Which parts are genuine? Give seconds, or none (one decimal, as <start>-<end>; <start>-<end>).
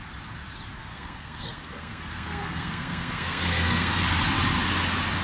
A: 0.0-0.9; 4.0-5.2